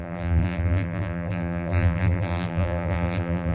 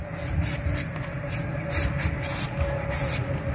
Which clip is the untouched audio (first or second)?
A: second